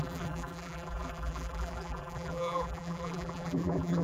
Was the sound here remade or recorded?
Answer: remade